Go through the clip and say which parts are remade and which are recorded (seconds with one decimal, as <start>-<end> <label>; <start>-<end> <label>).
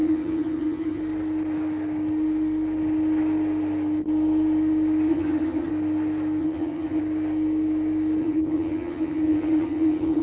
0.0-1.0 remade; 1.0-5.1 recorded; 5.1-5.7 remade; 5.7-6.4 recorded; 6.4-7.0 remade; 7.0-8.2 recorded; 8.2-10.2 remade